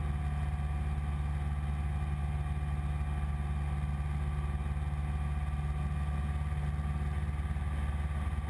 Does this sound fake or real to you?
real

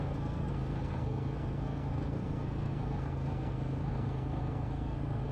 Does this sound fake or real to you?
fake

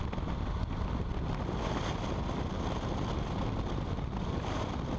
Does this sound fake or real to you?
real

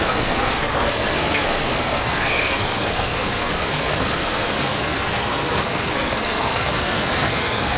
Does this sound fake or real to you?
fake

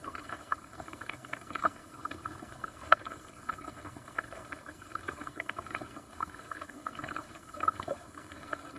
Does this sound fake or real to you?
fake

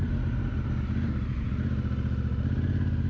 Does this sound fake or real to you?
real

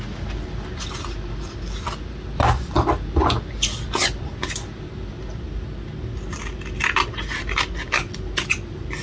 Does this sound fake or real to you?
real